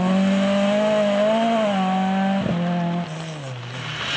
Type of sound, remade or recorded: recorded